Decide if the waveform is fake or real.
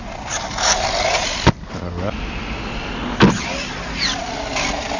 real